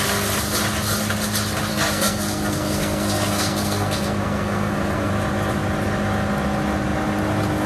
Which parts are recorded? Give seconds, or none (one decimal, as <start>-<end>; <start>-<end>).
0.0-1.7; 5.1-7.7

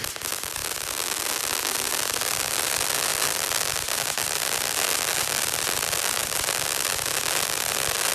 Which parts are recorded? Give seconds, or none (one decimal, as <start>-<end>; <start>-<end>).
0.0-8.1